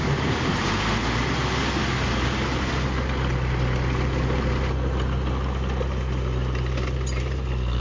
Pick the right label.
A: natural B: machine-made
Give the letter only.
A